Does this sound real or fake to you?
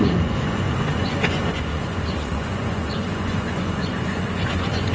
fake